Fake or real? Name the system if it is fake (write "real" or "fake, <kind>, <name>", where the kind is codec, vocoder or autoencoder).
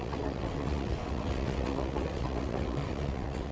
fake, vocoder, WaveNeXt